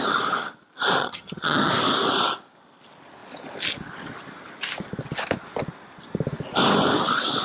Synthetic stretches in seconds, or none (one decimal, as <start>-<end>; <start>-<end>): 1.0-1.7